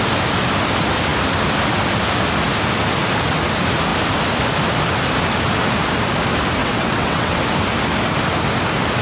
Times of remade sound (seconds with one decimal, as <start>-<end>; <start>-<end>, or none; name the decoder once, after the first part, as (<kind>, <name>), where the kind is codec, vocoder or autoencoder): 6.6-7.4 (vocoder, WaveNeXt)